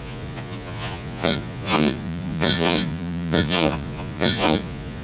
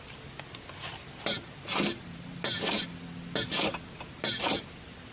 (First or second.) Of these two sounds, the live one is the second